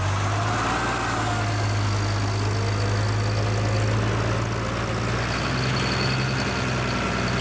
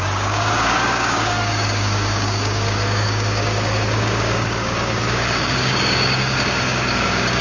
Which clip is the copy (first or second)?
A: second